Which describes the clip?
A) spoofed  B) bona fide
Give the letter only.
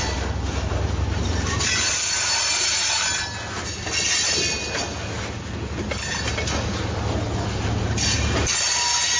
B